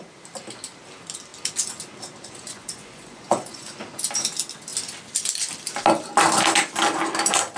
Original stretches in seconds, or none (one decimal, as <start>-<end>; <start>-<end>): 0.0-2.2; 3.8-7.6